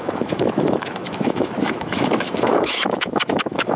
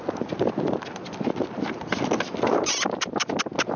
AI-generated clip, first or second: first